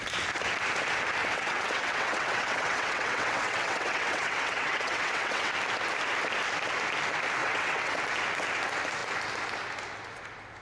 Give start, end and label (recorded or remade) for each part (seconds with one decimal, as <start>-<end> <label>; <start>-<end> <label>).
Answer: 0.0-1.2 recorded; 1.2-5.5 remade; 5.5-7.4 recorded; 7.4-8.0 remade; 8.0-10.6 recorded